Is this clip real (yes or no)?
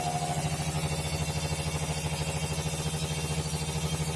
yes